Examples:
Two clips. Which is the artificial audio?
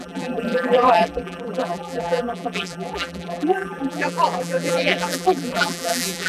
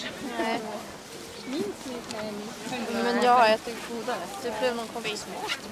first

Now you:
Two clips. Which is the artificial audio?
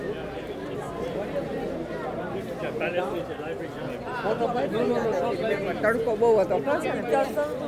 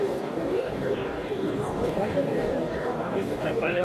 second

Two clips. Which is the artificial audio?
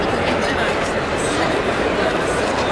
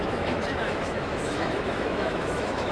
second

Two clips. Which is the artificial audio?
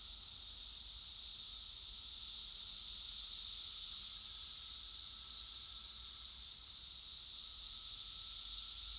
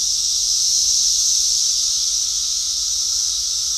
second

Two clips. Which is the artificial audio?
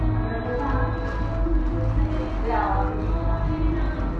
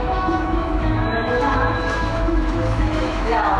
second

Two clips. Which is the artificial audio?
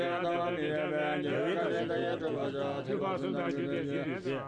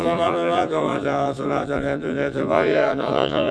second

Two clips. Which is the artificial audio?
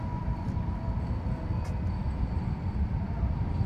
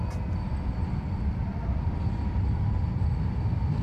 first